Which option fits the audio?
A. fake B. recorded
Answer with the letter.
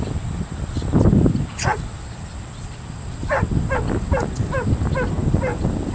B